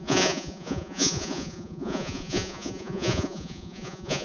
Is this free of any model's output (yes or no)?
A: no